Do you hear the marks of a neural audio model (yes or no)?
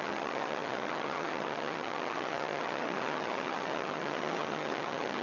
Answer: yes